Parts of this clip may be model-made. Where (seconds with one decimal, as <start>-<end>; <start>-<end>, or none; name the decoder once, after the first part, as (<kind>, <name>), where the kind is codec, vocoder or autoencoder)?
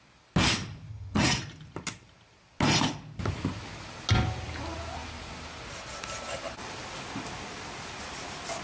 0.9-1.4 (vocoder, HiFi-GAN)